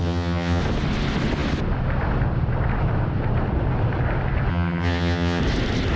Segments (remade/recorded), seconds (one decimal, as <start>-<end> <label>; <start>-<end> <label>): 0.0-0.6 remade; 0.6-4.5 recorded; 4.5-5.4 remade; 5.4-6.0 recorded